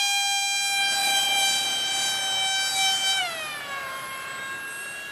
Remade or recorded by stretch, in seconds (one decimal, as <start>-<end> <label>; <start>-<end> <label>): 0.0-1.0 recorded; 1.0-2.2 remade; 2.2-2.7 recorded; 2.7-4.4 remade; 4.4-5.1 recorded